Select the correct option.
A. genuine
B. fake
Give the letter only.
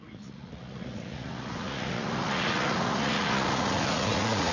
B